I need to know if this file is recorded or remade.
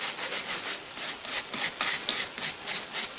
recorded